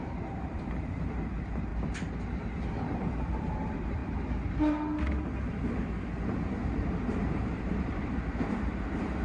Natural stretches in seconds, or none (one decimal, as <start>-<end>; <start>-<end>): 1.7-3.1; 4.0-7.2